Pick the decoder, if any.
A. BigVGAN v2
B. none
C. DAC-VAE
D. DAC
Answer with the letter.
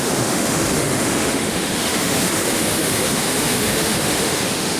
C